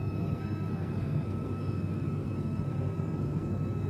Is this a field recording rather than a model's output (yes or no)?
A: no